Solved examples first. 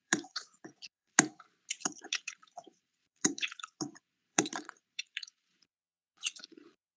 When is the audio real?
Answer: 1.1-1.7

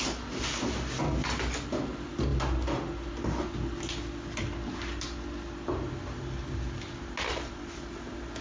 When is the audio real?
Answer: 0.0-8.4